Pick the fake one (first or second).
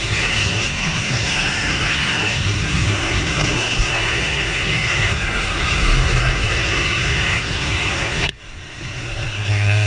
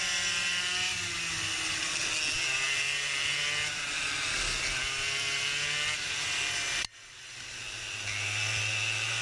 first